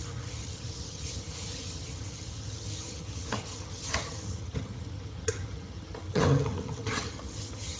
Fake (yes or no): yes